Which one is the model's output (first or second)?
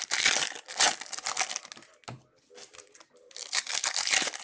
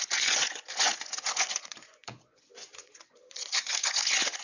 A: second